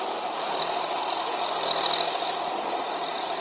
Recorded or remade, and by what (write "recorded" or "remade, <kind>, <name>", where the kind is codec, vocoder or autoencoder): recorded